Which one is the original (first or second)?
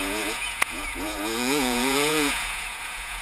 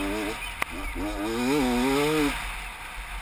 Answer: second